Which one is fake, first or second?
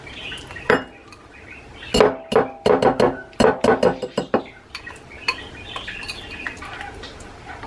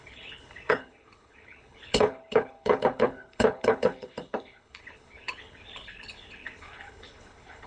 second